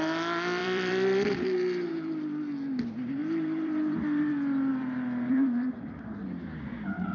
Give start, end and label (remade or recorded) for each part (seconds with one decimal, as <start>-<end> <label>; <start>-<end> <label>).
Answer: 0.0-0.6 recorded; 0.6-1.3 remade; 1.3-3.2 recorded; 3.2-4.3 remade; 4.3-4.7 recorded; 4.7-6.2 remade; 6.2-7.1 recorded